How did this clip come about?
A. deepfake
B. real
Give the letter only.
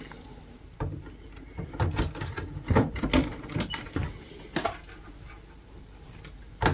B